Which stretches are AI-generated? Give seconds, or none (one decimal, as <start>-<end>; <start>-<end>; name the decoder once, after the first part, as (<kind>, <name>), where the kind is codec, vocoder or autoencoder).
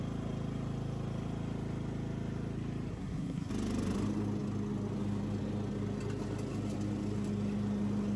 2.9-3.5 (codec, SNAC)